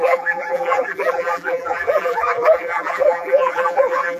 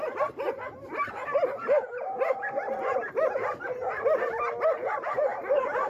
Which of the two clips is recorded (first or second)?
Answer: second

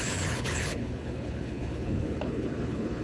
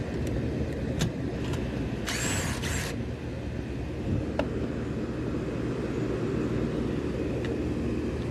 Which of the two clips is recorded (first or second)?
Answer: second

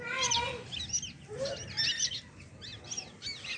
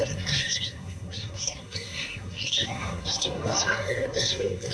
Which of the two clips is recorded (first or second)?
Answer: first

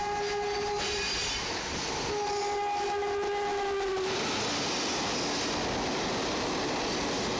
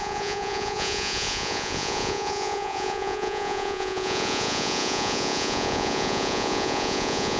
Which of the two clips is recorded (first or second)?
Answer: first